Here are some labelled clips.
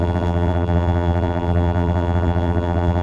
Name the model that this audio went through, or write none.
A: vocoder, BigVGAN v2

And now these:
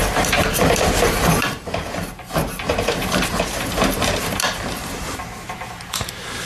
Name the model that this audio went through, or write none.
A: vocoder, BigVGAN v2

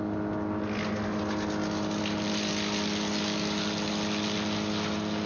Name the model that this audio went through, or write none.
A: none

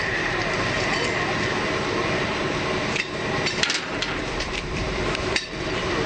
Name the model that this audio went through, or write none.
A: vocoder, BigVGAN v2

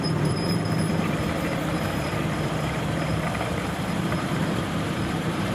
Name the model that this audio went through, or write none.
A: vocoder, BigVGAN v2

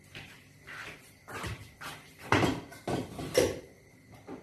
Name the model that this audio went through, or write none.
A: vocoder, BigVGAN v2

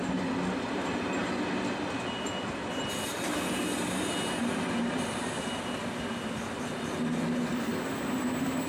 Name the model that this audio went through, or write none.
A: none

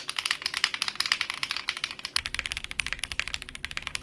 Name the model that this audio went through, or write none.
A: none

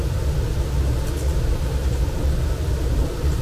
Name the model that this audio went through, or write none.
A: none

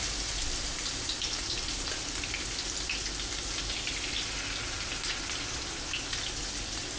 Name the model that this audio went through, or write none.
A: none